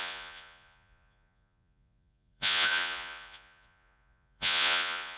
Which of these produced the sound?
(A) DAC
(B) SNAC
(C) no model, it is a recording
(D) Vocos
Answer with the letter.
D